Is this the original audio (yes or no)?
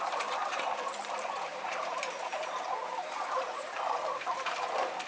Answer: no